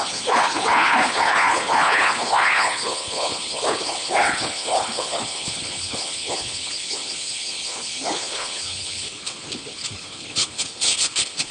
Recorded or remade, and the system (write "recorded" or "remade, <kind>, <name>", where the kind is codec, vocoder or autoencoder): remade, codec, HILCodec